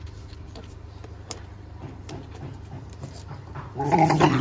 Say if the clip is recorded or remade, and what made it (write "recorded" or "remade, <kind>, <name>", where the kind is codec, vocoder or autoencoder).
remade, vocoder, BigVGAN v2